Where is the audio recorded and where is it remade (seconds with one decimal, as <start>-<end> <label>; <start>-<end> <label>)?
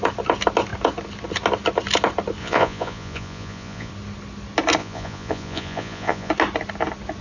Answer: 0.0-2.4 recorded; 2.4-3.9 remade; 3.9-4.8 recorded; 4.8-6.3 remade; 6.3-7.2 recorded